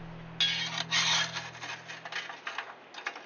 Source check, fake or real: real